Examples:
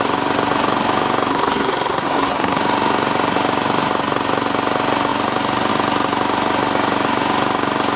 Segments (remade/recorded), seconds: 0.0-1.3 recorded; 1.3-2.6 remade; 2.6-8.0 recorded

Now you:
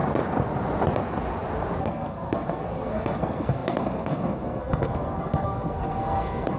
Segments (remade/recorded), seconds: 0.0-1.8 recorded; 1.8-6.6 remade

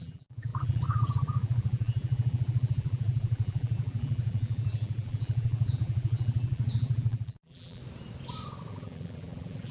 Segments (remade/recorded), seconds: 0.0-7.8 remade; 7.8-8.7 recorded; 8.7-9.7 remade

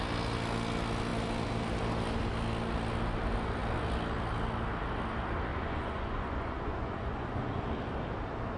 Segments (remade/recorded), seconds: 0.0-5.5 recorded; 5.5-7.6 remade; 7.6-8.6 recorded